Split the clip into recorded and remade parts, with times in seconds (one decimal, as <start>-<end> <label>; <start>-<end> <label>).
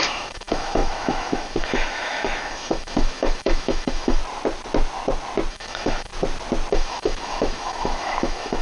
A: 0.0-4.2 remade; 4.2-5.5 recorded; 5.5-6.1 remade; 6.1-6.7 recorded; 6.7-8.6 remade